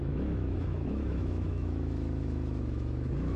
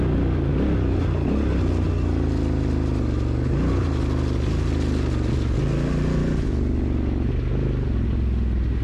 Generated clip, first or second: first